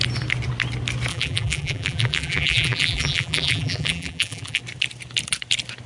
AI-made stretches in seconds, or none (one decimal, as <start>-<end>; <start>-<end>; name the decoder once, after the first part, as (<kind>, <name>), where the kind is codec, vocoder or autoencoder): 1.1-4.6 (vocoder, BigVGAN v2)